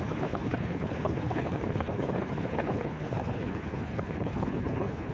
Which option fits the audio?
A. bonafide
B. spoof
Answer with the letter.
B